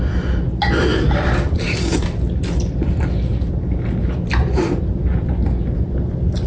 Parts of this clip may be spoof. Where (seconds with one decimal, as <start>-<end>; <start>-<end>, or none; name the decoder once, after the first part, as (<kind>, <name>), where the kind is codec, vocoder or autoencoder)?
none